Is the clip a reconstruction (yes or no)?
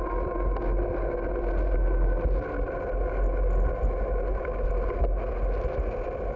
no